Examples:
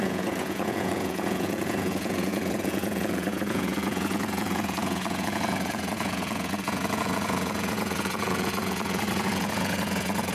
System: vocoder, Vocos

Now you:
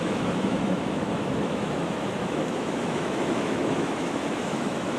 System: autoencoder, DAC-VAE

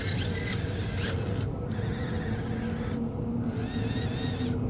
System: none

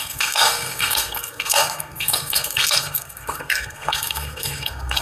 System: codec, SNAC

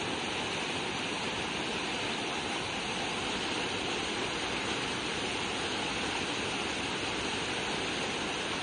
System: none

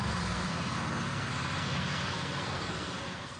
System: codec, SNAC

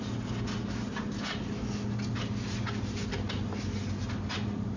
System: none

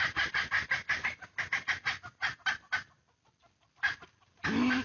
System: none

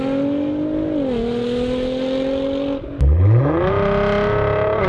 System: none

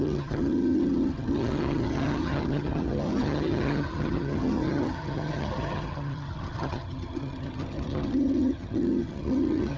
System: vocoder, HiFi-GAN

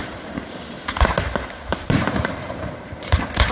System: vocoder, BigVGAN v2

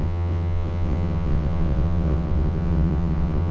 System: vocoder, WaveNeXt